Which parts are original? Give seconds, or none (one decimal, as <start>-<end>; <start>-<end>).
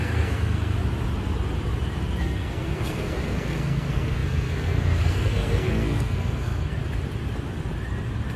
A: 0.8-2.2; 6.8-8.4